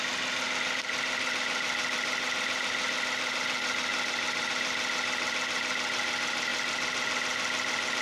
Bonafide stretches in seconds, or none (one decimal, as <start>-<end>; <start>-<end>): 0.0-8.0